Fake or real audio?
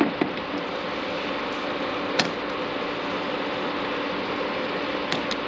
real